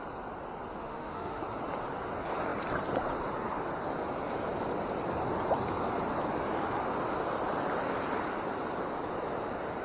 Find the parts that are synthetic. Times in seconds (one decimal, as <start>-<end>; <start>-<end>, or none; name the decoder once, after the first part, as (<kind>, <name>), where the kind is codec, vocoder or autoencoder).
0.8-1.4 (autoencoder, DAC-VAE)